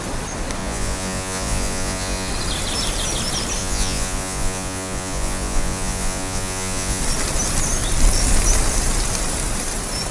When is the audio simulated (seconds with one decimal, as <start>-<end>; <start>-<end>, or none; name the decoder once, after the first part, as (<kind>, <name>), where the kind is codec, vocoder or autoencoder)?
0.6-2.3 (vocoder, Vocos); 3.6-7.0